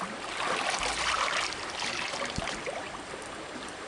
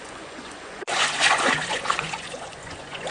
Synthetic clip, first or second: second